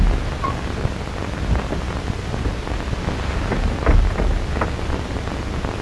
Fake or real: real